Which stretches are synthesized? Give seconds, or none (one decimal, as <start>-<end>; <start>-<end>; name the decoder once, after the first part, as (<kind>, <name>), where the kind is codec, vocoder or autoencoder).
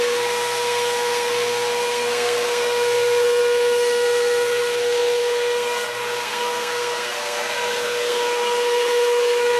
0.0-9.6 (codec, SNAC)